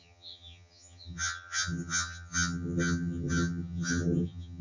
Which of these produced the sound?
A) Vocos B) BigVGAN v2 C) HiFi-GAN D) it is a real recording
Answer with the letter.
C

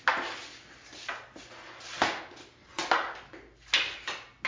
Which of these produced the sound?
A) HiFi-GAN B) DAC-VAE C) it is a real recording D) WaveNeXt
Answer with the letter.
C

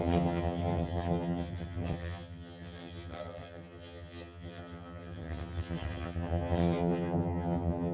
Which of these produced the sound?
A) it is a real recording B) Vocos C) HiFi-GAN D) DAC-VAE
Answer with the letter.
C